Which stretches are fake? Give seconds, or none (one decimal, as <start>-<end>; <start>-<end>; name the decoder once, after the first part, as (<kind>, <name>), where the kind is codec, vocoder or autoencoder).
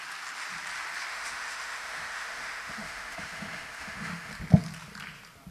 1.1-4.3 (autoencoder, DAC-VAE)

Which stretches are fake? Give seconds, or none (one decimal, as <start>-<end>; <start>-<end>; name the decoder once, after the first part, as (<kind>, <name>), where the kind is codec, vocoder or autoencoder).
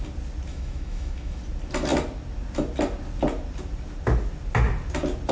0.5-1.4 (autoencoder, DAC-VAE)